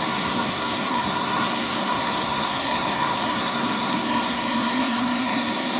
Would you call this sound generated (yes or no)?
yes